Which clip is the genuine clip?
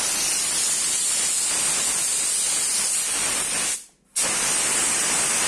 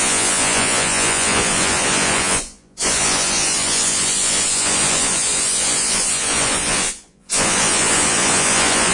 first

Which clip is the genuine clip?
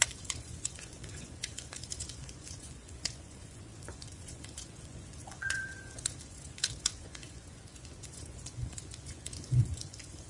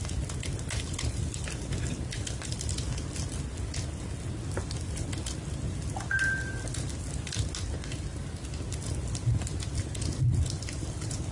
second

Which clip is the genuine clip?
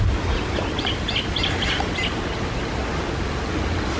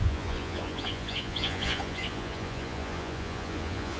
first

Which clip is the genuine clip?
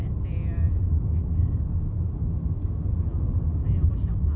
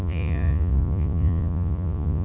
first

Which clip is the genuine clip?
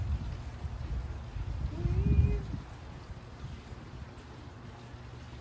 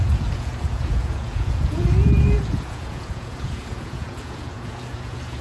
first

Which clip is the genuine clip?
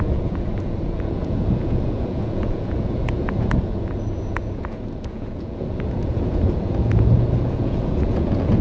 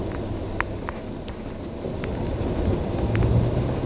second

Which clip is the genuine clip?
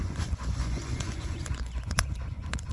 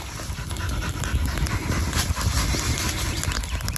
second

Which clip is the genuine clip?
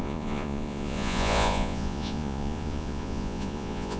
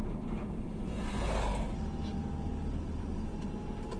second